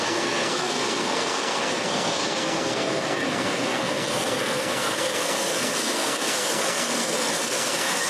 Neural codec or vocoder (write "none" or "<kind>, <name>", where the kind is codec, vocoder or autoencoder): codec, SNAC